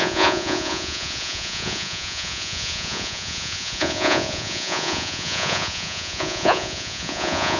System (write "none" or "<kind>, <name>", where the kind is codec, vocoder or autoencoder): vocoder, Vocos